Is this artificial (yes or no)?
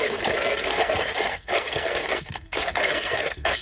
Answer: yes